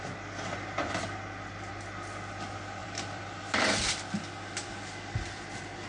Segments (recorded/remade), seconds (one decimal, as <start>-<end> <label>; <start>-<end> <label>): 0.0-2.8 recorded; 2.8-3.9 remade; 3.9-5.9 recorded